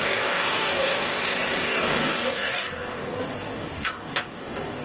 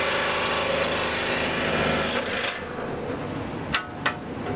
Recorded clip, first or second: second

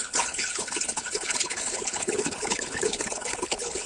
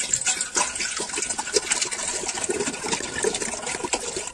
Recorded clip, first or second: second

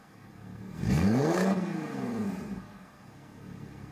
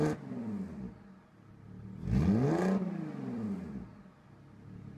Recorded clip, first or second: second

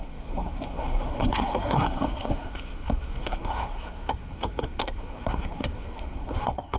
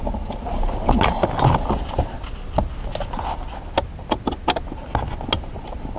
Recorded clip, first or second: second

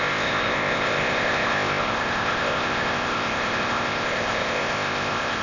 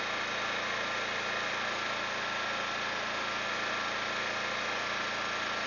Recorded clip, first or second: second